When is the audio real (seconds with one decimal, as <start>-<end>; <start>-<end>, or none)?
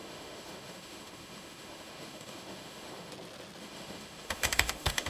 3.1-3.6